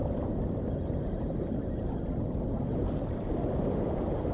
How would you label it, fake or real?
real